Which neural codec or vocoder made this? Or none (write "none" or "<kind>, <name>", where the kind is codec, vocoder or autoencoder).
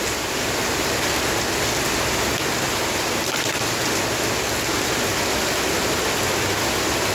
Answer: none